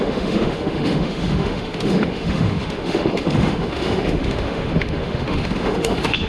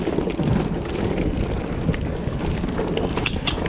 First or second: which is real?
second